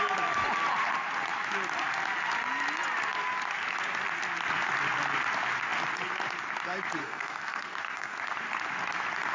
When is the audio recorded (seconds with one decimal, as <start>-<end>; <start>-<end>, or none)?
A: 0.0-7.0; 8.2-9.3